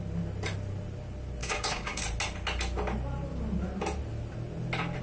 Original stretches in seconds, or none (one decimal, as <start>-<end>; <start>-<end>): 0.0-1.4; 2.0-5.0